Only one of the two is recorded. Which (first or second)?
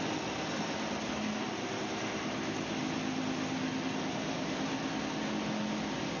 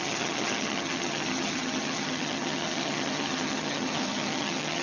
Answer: first